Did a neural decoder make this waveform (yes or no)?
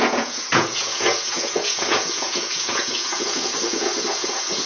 yes